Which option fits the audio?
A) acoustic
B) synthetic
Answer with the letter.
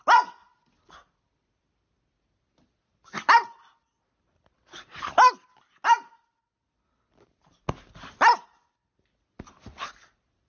A